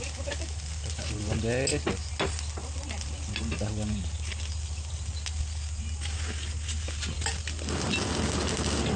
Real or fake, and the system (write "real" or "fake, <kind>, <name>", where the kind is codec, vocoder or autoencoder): real